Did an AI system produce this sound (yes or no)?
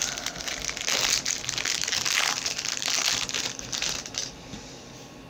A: no